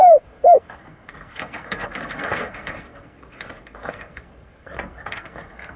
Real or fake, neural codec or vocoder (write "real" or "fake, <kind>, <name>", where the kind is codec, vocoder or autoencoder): fake, codec, SNAC